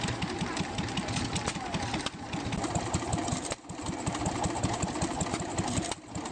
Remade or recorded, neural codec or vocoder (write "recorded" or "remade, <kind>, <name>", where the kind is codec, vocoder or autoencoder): recorded